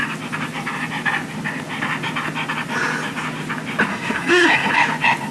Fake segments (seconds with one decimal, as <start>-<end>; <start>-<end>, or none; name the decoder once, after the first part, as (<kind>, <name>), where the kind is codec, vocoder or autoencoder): 3.9-4.7 (codec, SNAC)